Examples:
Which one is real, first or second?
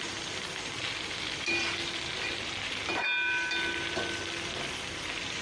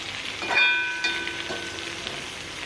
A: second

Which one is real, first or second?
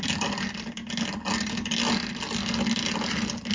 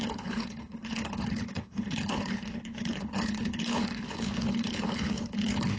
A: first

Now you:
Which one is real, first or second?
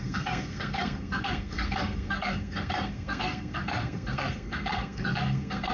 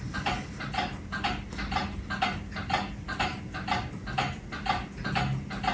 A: second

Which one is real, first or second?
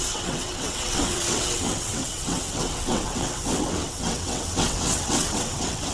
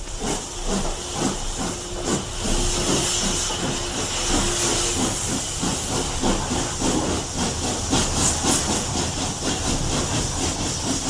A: second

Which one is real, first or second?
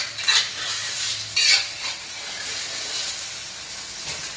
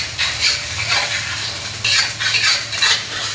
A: first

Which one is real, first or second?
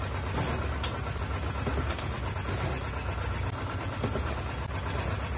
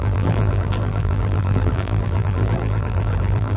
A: first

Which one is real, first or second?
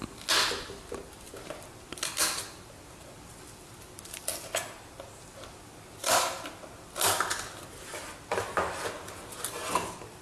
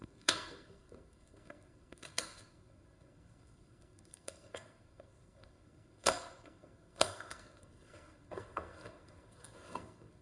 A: first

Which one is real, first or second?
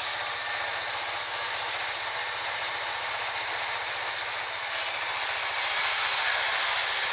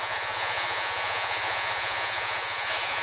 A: first